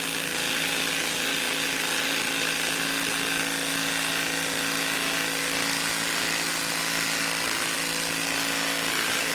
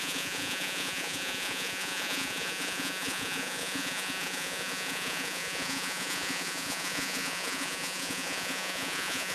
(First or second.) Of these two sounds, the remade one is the second